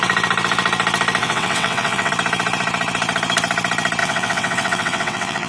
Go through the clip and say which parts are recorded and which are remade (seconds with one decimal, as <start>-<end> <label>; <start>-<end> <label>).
0.0-1.2 recorded; 1.2-2.1 remade; 2.1-4.0 recorded; 4.0-5.5 remade

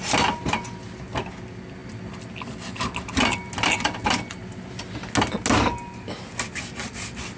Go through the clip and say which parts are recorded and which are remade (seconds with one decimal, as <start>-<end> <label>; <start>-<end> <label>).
0.0-7.4 recorded

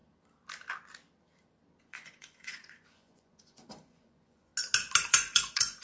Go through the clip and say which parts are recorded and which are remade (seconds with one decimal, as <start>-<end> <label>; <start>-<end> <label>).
0.0-1.8 recorded; 1.8-4.5 remade; 4.5-5.1 recorded; 5.1-5.8 remade

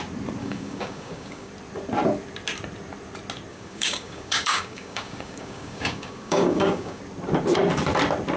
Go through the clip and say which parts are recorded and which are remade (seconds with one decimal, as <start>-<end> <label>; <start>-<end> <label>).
0.0-0.4 recorded; 0.4-1.5 remade; 1.5-3.5 recorded; 3.5-7.0 remade; 7.0-8.4 recorded

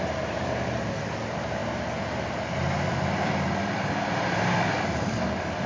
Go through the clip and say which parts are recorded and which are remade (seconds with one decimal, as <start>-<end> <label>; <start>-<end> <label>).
0.0-5.7 remade

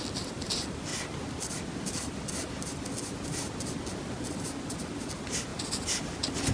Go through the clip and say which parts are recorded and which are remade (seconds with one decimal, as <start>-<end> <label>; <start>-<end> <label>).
0.0-6.5 recorded

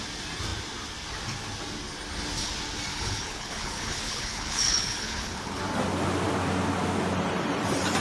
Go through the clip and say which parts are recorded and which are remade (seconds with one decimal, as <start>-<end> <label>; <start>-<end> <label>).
0.0-2.9 recorded; 2.9-5.6 remade; 5.6-8.0 recorded

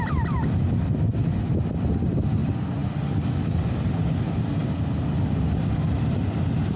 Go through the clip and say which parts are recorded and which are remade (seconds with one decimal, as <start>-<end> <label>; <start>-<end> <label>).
0.0-6.8 recorded